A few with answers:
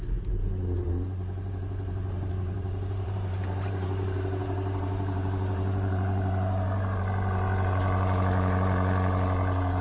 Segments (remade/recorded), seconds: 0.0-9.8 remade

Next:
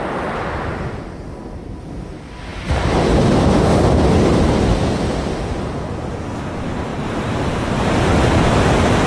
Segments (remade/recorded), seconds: 0.0-6.9 recorded; 6.9-8.5 remade; 8.5-9.1 recorded

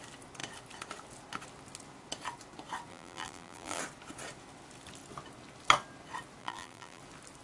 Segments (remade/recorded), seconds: 0.0-2.9 recorded; 2.9-3.8 remade; 3.8-6.4 recorded; 6.4-7.0 remade; 7.0-7.4 recorded

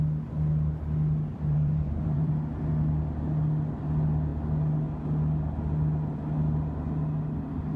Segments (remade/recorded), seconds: 0.0-1.3 recorded; 1.3-2.3 remade; 2.3-7.8 recorded

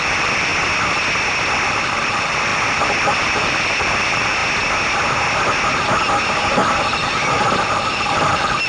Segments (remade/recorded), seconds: 0.0-0.5 remade; 0.5-1.5 recorded; 1.5-4.4 remade; 4.4-6.8 recorded; 6.8-8.7 remade

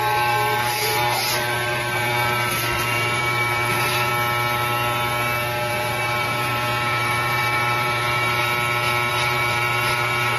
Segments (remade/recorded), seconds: 0.0-4.1 remade; 4.1-5.7 recorded; 5.7-8.4 remade; 8.4-9.1 recorded; 9.1-10.4 remade

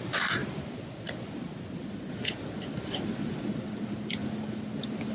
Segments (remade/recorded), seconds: 0.0-5.1 recorded

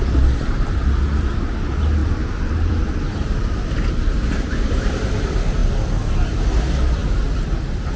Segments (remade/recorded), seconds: 0.0-5.6 remade; 5.6-6.6 recorded; 6.6-7.0 remade; 7.0-7.6 recorded; 7.6-8.0 remade